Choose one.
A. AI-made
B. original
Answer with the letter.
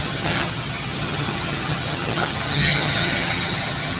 A